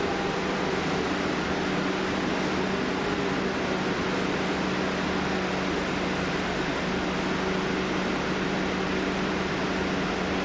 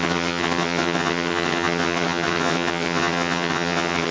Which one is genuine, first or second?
first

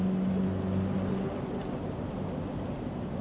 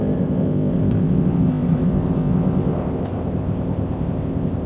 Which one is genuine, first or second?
first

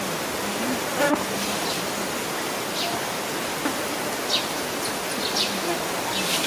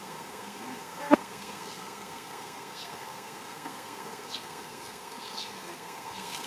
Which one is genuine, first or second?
first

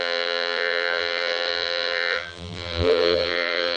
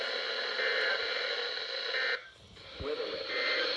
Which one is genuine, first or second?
second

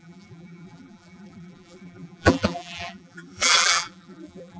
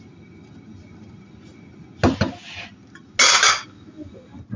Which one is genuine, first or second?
second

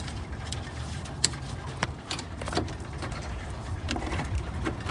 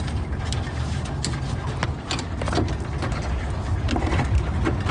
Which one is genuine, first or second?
second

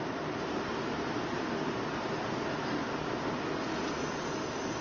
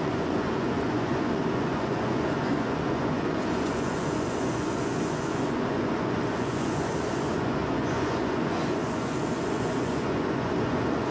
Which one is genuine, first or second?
first